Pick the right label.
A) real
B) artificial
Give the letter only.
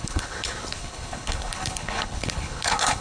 B